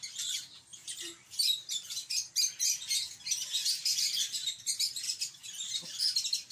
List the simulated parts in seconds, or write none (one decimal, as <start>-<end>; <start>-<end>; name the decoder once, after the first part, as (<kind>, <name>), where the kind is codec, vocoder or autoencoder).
0.7-2.3 (vocoder, BigVGAN v2)

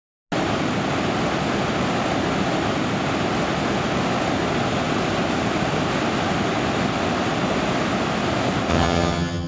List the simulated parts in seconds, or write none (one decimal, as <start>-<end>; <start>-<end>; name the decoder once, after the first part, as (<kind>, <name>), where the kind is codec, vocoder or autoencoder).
8.7-9.5 (vocoder, HiFi-GAN)

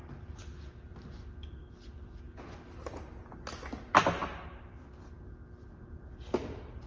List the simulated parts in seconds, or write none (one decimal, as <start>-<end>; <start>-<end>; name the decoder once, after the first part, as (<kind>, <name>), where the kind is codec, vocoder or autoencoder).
none

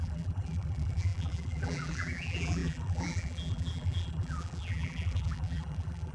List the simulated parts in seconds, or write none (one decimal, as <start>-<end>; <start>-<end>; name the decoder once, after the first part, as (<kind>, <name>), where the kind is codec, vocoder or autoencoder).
0.0-6.1 (vocoder, BigVGAN v2)

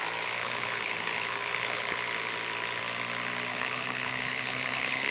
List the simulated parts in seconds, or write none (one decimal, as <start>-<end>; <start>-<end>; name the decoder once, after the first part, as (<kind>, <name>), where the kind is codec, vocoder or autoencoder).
0.4-2.0 (codec, HILCodec); 3.5-5.1

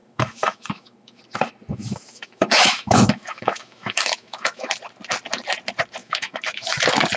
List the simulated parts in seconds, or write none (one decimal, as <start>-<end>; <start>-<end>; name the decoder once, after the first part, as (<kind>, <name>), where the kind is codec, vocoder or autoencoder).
0.0-1.2 (autoencoder, DAC-VAE); 1.7-4.7; 6.0-6.8

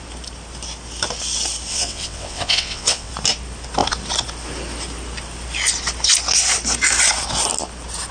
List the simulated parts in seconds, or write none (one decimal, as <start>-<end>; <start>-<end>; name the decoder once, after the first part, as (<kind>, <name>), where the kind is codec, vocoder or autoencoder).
1.7-3.1 (vocoder, WaveNeXt)